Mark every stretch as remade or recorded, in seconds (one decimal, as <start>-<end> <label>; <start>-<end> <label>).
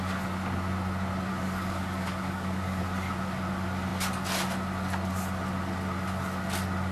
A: 0.0-1.3 recorded; 1.3-2.8 remade; 2.8-6.9 recorded